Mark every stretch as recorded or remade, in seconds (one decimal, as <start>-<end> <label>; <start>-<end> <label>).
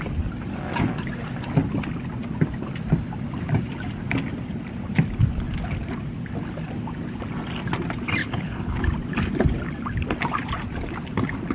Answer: 0.0-8.2 recorded; 8.2-8.8 remade; 8.8-11.5 recorded